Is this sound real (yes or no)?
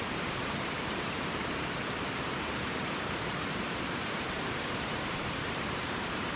no